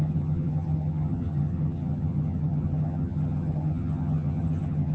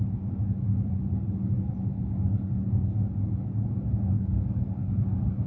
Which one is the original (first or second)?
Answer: second